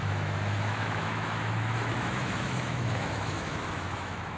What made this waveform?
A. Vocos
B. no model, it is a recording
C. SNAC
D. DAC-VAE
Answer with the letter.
D